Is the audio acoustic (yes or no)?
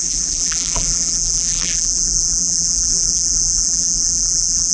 no